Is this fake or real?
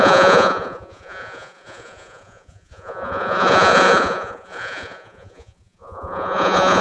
fake